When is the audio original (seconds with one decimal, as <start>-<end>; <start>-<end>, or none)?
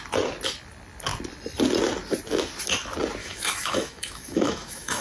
0.0-3.2